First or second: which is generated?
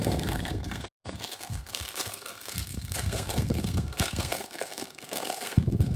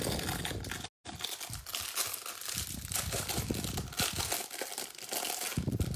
first